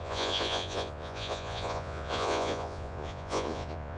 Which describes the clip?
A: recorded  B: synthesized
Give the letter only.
B